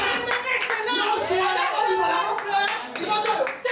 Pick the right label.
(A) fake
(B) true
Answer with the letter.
B